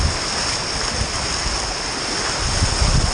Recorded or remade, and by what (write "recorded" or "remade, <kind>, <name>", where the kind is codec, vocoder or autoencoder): recorded